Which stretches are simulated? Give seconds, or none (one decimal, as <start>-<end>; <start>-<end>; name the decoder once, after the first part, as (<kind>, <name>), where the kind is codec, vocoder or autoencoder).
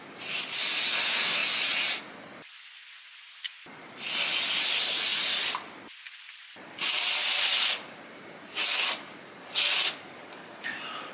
none